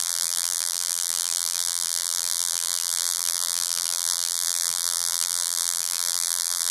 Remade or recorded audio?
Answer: remade